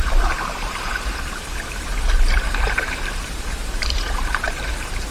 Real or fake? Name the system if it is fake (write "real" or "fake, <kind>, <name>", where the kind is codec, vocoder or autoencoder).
fake, vocoder, BigVGAN v2